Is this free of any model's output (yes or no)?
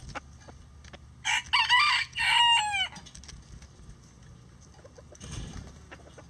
yes